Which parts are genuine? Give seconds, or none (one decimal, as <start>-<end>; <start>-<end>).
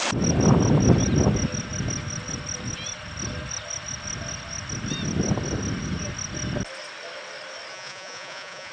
0.0-7.7